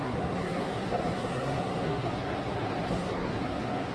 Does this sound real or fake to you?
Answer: fake